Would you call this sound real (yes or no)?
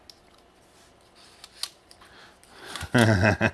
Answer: yes